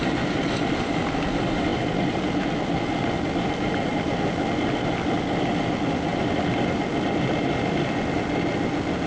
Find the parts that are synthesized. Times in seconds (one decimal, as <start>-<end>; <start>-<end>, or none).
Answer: none